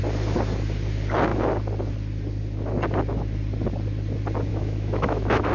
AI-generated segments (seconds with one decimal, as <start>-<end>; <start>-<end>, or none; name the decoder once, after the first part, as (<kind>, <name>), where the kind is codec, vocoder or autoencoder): 4.5-5.5 (autoencoder, DAC-VAE)